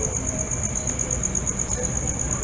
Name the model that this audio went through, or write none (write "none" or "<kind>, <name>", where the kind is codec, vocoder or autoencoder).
none